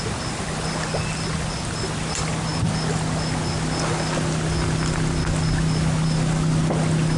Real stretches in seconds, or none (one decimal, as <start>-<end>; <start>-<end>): 0.0-7.2